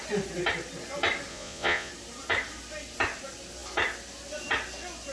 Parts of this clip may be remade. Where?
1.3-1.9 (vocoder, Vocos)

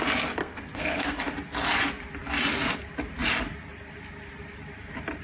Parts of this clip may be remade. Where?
0.4-1.2 (codec, SNAC)

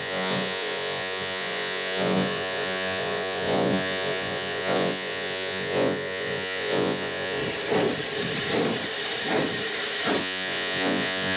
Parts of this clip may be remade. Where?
0.0-7.4 (vocoder, Vocos); 10.2-11.4

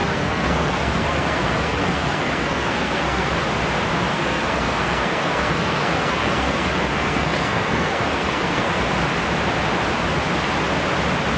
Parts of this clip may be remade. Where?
0.0-3.3 (codec, SNAC); 4.1-8.8

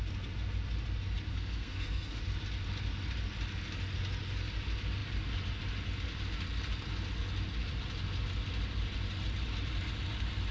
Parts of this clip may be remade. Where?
1.3-2.2 (codec, SNAC)